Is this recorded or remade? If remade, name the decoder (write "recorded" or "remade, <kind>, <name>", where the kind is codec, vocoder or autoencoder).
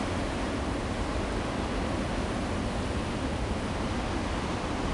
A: recorded